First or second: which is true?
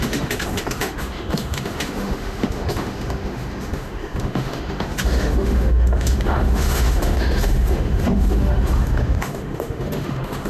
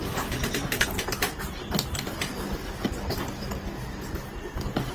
second